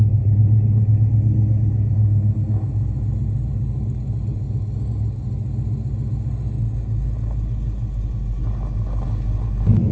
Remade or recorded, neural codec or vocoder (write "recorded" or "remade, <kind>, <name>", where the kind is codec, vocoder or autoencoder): recorded